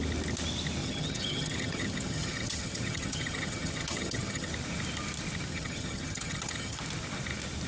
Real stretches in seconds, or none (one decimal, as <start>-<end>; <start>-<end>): 0.0-0.8; 4.5-5.5; 6.8-7.7